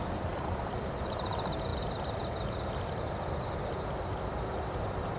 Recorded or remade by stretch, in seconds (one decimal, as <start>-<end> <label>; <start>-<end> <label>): 0.0-5.2 recorded